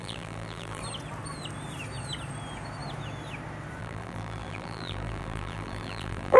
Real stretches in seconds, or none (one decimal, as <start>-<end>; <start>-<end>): 0.8-3.8